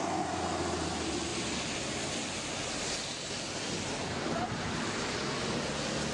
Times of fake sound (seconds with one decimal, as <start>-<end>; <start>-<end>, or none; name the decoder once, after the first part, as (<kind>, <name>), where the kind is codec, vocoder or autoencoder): none